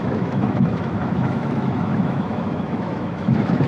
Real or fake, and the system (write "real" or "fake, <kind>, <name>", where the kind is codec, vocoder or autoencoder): fake, autoencoder, DAC-VAE